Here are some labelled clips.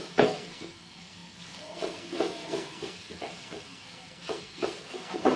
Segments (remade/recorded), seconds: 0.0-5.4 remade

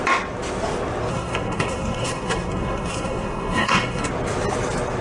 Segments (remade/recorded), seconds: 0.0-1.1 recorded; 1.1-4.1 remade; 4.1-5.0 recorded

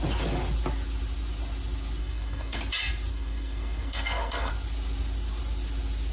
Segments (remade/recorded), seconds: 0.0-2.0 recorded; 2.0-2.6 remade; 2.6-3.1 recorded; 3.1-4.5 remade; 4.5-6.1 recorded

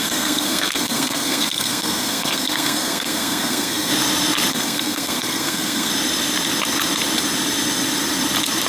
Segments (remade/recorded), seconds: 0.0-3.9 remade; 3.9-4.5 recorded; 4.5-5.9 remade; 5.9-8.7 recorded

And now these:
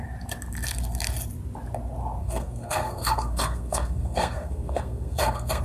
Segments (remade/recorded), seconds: 0.0-2.2 recorded; 2.2-5.6 remade